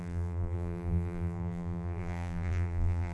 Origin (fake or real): fake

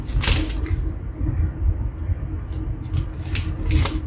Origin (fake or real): real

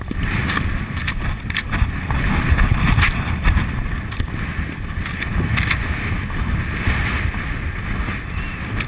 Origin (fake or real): real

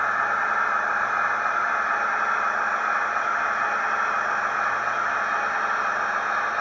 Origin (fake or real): real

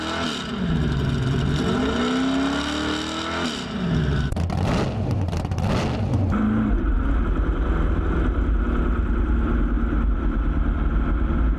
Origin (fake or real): real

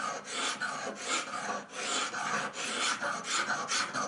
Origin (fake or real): real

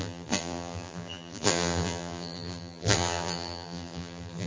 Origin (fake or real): fake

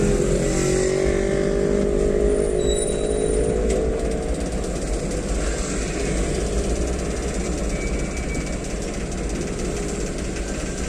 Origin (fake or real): real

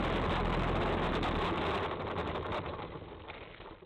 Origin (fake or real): real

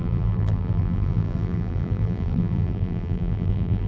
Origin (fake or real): fake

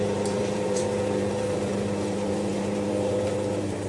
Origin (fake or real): fake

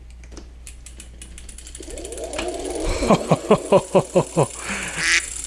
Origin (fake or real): real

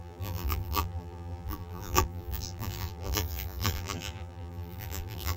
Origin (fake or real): fake